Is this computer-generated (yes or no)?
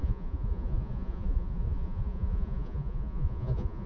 yes